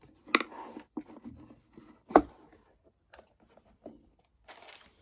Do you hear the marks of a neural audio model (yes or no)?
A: no